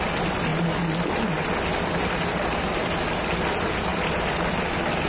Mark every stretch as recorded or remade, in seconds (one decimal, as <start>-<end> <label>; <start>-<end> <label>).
0.0-3.9 recorded; 3.9-4.4 remade; 4.4-5.1 recorded